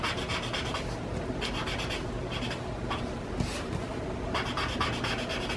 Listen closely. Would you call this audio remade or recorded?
recorded